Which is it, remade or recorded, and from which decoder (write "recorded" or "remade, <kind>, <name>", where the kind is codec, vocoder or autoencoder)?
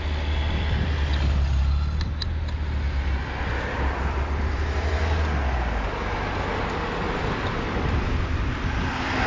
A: recorded